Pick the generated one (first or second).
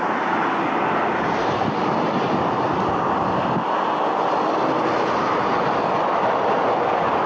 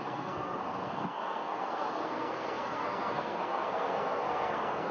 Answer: second